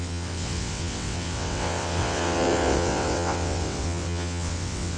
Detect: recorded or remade remade